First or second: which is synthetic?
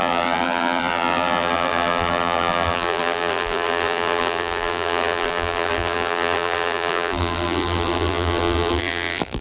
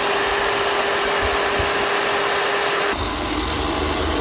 first